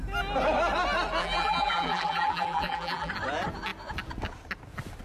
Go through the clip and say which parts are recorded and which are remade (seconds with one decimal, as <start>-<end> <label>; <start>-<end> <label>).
0.0-1.2 recorded; 1.2-3.1 remade; 3.1-5.0 recorded